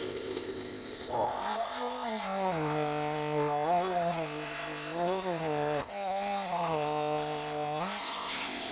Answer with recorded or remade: remade